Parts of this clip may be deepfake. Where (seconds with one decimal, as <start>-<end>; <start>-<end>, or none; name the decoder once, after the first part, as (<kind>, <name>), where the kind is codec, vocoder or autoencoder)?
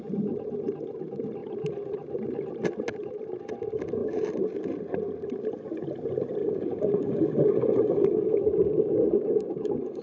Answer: 6.4-10.0 (codec, DAC)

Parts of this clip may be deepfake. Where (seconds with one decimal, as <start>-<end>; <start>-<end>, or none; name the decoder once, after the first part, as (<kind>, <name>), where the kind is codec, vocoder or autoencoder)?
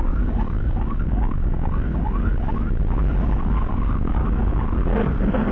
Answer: 0.0-2.3 (codec, DAC); 3.7-4.2; 5.0-5.5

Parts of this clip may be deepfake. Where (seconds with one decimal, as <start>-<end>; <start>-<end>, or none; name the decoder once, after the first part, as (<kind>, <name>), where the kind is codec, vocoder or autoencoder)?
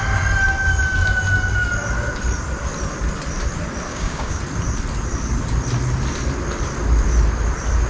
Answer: 3.9-4.4 (codec, DAC)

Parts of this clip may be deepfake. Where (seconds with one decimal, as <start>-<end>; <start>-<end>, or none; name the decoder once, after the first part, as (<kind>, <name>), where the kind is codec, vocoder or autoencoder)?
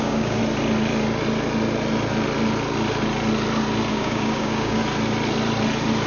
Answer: 0.0-0.4 (codec, DAC); 3.9-4.8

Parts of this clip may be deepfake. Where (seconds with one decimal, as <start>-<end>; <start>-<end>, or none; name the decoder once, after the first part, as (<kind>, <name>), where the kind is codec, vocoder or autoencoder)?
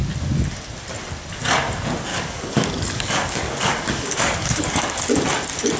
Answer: 2.1-5.0 (codec, DAC)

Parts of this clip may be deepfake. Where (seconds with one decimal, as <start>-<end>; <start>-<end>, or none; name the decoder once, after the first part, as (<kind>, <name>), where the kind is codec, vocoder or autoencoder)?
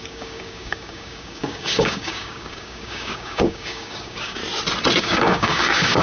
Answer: 0.0-4.4 (codec, DAC); 5.0-6.0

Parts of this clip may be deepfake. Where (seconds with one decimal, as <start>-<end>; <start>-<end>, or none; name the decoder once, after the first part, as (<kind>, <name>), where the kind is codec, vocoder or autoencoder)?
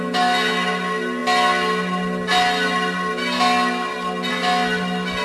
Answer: none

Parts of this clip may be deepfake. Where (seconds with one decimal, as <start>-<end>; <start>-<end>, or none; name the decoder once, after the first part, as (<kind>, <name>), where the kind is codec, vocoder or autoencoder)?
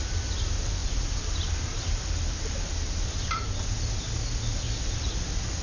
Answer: none